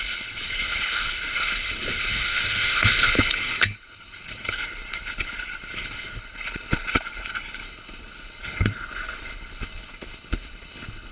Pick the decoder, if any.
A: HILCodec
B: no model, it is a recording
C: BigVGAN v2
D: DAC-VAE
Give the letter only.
A